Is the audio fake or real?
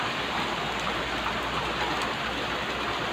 real